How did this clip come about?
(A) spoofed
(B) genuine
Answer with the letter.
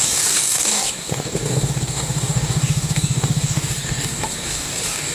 A